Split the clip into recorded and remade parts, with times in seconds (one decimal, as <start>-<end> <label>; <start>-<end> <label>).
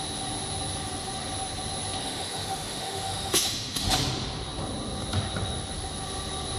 0.0-2.0 recorded; 2.0-3.9 remade; 3.9-6.6 recorded